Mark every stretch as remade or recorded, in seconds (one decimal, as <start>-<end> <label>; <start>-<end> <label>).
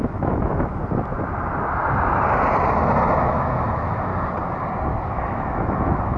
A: 0.0-0.8 remade; 0.8-3.2 recorded; 3.2-4.1 remade; 4.1-5.1 recorded; 5.1-6.2 remade